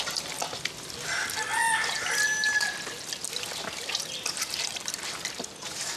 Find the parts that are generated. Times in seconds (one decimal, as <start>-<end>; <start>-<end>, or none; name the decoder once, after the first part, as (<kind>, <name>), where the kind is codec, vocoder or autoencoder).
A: none